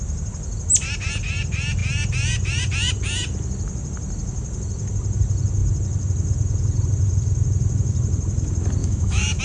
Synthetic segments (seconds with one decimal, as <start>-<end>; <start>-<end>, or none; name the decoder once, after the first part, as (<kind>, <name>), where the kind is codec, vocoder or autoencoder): 8.8-9.4 (autoencoder, DAC-VAE)